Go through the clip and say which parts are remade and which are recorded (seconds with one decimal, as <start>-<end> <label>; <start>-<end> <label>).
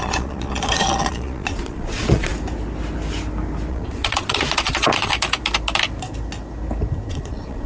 0.0-2.3 remade; 2.3-3.7 recorded; 3.7-5.1 remade; 5.1-7.1 recorded; 7.1-7.7 remade